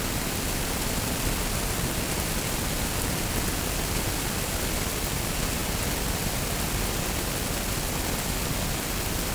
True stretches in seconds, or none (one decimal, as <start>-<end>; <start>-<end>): 0.0-9.3